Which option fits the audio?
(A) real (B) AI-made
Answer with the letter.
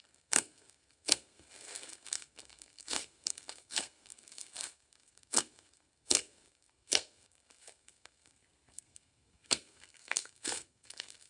B